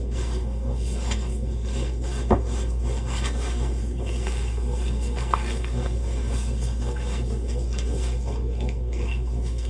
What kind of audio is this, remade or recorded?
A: remade